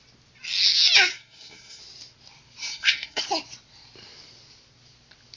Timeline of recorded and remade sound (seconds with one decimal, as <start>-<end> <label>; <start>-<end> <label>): 0.0-1.1 recorded; 1.1-1.8 remade; 1.8-2.6 recorded; 2.6-3.2 remade; 3.2-5.4 recorded